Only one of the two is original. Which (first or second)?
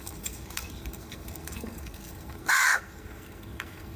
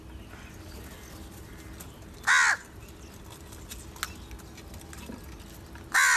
second